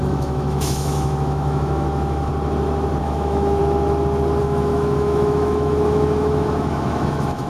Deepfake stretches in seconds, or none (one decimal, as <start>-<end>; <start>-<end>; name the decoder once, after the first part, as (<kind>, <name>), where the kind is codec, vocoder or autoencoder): 0.0-2.3 (autoencoder, DAC-VAE); 3.0-3.6; 4.4-7.5